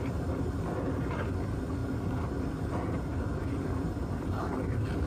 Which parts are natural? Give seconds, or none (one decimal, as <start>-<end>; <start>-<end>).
0.0-5.1